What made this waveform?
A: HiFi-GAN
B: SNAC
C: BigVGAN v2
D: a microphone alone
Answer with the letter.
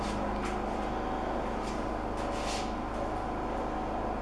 D